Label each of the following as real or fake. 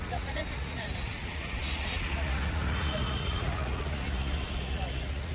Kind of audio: fake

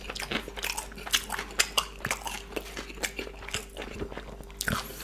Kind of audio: real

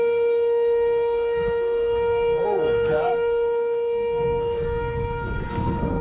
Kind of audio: fake